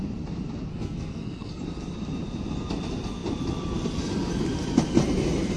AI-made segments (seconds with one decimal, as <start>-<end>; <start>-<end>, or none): 0.7-1.6